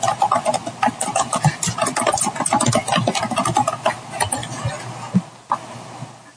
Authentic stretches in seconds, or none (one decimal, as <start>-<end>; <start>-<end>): 0.0-6.4